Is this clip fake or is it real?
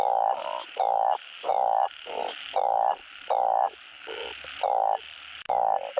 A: real